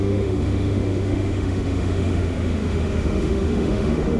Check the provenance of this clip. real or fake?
fake